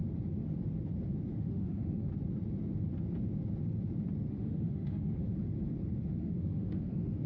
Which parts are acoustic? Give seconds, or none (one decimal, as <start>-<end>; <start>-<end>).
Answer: 0.0-1.3; 2.1-4.3; 5.3-6.2